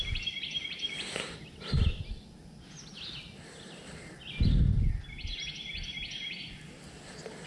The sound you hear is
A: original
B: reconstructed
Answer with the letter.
A